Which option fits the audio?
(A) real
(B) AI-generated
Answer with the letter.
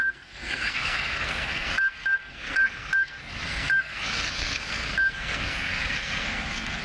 B